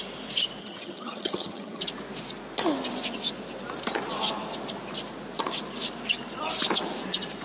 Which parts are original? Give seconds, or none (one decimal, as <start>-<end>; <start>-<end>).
0.0-0.6; 1.8-7.4